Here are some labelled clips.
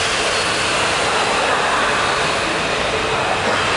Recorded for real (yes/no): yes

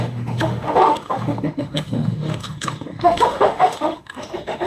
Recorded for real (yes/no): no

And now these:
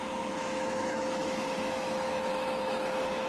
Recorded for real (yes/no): no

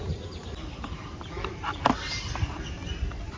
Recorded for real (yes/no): yes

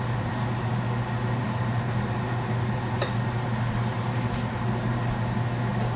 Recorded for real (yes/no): yes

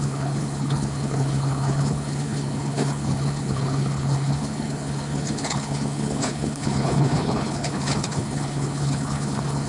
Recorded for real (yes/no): no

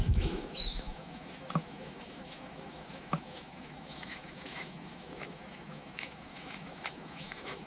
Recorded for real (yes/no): no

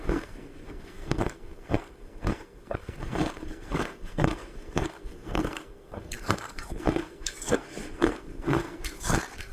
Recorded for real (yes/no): no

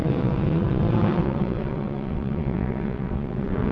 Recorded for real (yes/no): no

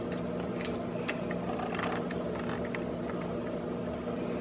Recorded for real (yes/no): yes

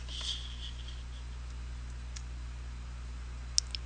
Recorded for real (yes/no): yes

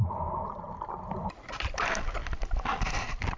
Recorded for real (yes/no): yes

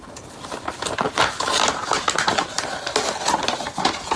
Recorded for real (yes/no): yes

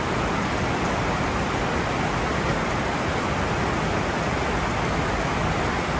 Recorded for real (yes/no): yes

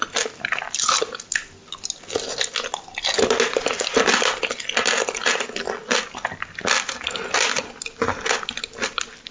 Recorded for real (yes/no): yes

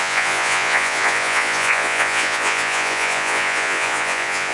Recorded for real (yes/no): no